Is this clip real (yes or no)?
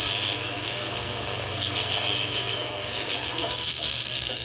no